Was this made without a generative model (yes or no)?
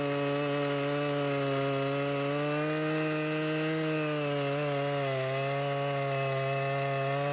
yes